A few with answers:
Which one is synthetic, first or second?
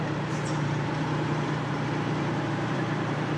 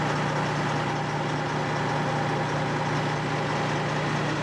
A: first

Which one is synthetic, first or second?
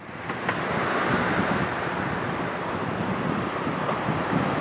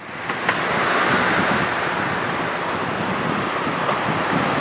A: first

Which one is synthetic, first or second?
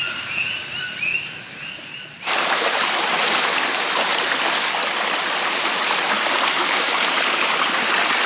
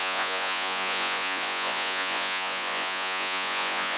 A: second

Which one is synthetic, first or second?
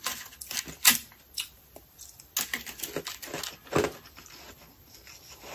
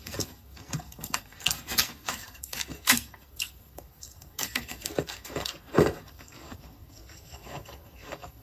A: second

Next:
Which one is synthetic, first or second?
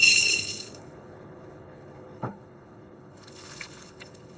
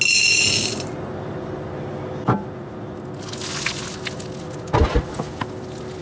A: first